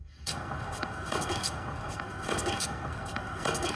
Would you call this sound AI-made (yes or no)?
yes